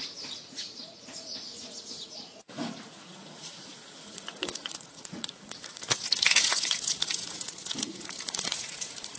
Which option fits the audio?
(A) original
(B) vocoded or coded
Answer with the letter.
B